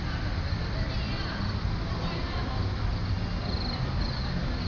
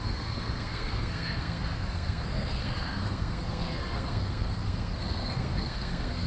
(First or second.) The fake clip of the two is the second